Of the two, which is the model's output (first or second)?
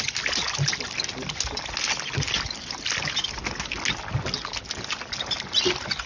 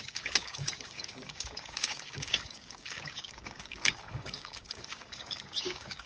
second